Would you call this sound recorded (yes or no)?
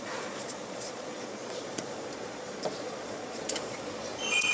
no